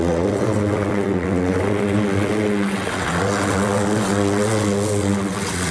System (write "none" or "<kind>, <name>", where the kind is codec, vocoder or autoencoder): vocoder, WaveNeXt